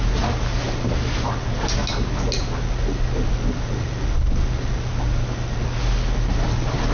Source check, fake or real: real